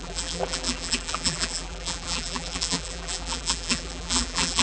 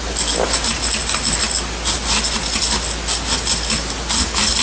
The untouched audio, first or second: second